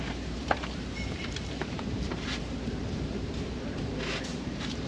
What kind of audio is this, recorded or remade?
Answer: remade